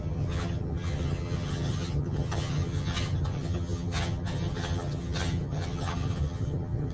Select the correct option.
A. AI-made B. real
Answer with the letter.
A